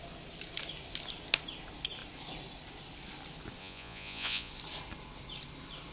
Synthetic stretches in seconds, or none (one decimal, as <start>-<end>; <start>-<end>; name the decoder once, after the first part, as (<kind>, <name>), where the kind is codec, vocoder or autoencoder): 3.6-4.5 (vocoder, Vocos)